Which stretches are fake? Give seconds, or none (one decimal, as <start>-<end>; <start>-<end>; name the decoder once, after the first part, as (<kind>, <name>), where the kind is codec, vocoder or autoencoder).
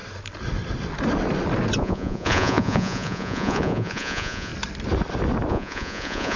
1.8-4.5 (vocoder, Vocos); 5.5-6.4